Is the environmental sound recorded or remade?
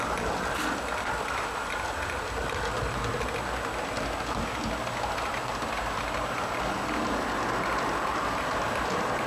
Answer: recorded